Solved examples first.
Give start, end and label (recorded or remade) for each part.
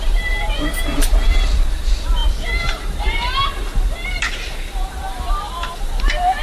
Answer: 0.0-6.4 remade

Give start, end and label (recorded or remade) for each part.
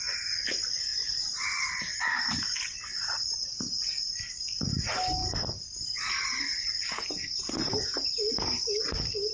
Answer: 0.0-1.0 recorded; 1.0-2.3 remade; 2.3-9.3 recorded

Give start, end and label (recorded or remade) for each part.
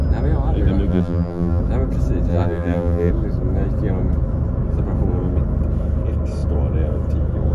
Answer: 0.0-0.9 recorded; 0.9-1.6 remade; 1.6-2.3 recorded; 2.3-3.1 remade; 3.1-7.5 recorded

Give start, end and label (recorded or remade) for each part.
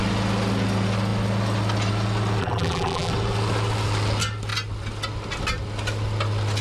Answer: 0.0-2.4 recorded; 2.4-3.1 remade; 3.1-6.6 recorded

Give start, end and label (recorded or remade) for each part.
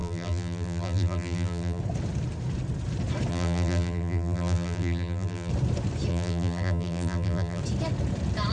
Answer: 0.0-1.8 remade; 1.8-3.3 recorded; 3.3-5.5 remade; 5.5-6.1 recorded; 6.1-7.6 remade; 7.6-8.5 recorded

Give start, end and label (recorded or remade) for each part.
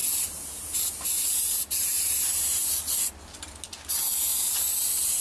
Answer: 0.0-3.1 remade; 3.1-5.2 recorded